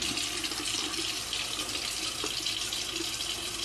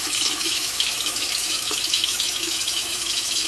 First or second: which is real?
first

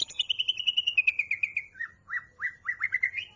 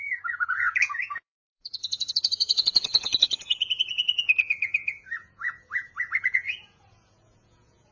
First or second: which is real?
first